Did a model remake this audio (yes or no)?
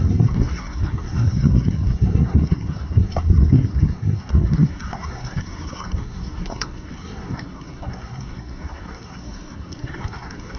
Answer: yes